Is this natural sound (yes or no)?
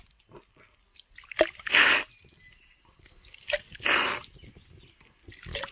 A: yes